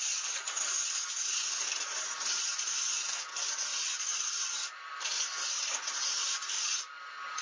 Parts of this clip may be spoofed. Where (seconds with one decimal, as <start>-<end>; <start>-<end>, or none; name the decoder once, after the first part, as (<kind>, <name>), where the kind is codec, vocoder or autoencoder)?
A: 3.7-5.0 (vocoder, BigVGAN v2)